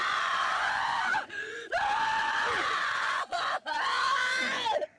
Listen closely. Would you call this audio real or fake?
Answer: fake